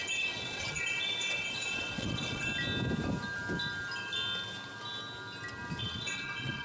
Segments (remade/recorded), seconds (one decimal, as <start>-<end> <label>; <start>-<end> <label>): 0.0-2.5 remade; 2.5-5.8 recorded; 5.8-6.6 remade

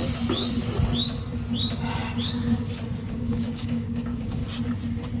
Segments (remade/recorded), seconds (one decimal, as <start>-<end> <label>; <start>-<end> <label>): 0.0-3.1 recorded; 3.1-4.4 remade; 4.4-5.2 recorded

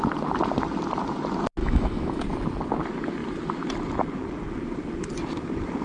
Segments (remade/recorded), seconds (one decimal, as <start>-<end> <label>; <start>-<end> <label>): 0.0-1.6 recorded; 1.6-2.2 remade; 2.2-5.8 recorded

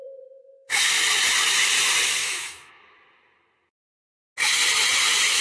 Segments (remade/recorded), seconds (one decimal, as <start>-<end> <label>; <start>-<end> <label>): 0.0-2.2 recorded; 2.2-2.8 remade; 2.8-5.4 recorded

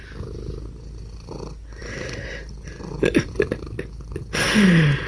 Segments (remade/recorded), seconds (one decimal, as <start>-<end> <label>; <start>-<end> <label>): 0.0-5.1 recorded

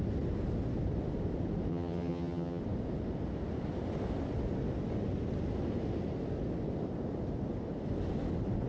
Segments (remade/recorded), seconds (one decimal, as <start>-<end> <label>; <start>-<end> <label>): 0.0-1.7 recorded; 1.7-2.6 remade; 2.6-8.7 recorded